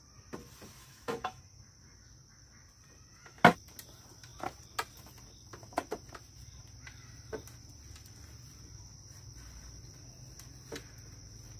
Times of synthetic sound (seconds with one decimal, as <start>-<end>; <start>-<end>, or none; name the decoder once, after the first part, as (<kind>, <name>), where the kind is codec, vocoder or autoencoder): 0.8-1.4 (autoencoder, DAC-VAE)